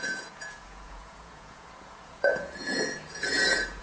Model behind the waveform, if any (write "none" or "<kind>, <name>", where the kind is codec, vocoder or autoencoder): vocoder, Vocos